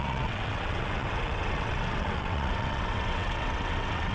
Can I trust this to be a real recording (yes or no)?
no